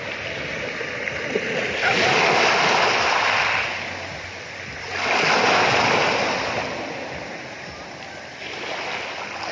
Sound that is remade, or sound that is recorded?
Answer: recorded